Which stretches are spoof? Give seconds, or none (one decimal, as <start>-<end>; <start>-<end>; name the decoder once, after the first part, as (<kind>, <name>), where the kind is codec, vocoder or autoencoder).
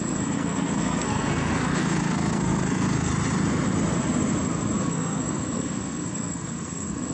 0.0-3.1 (codec, SNAC); 4.8-7.1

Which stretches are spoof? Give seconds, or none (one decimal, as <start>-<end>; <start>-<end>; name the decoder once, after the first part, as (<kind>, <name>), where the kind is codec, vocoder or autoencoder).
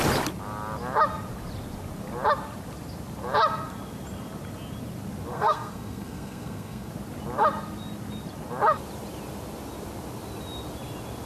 5.3-6.9 (codec, SNAC)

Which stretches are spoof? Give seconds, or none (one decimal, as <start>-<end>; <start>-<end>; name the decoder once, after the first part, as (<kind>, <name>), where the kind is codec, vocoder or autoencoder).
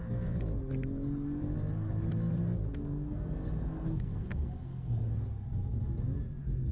2.8-5.1 (codec, SNAC)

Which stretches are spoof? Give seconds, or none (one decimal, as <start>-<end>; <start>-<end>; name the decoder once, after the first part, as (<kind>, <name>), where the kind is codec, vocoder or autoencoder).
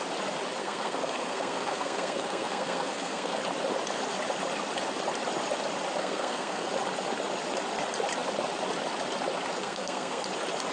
0.6-3.4 (codec, SNAC); 6.0-6.7; 9.6-10.2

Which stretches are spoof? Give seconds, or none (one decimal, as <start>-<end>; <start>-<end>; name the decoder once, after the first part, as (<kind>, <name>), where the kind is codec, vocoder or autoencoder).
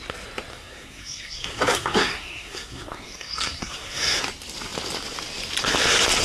0.5-4.2 (codec, SNAC)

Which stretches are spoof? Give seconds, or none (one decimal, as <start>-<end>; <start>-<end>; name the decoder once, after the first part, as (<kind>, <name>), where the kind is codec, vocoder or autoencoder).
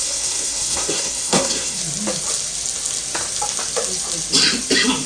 0.0-1.8 (codec, SNAC)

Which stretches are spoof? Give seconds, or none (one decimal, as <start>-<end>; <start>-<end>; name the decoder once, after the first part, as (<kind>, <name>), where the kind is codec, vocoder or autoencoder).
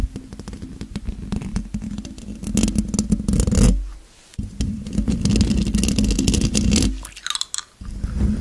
none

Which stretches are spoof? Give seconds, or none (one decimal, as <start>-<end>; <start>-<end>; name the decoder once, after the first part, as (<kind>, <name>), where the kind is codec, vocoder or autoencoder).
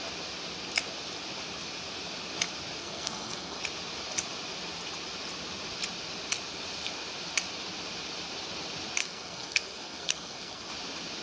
2.8-3.6 (codec, SNAC); 9.0-10.7